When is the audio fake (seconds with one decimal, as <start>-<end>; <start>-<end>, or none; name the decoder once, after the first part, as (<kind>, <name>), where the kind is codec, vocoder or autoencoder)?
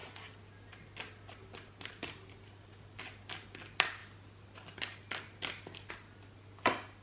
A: none